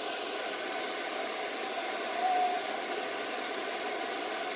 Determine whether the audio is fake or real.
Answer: real